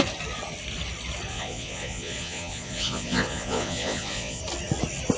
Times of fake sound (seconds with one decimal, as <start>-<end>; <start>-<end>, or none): 1.3-4.4